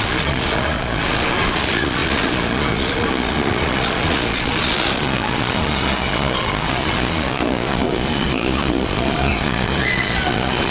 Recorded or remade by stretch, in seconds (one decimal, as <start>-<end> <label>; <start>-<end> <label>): 0.0-10.7 remade